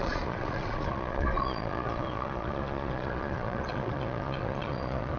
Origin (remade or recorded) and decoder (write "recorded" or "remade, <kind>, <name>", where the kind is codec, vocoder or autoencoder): remade, vocoder, Vocos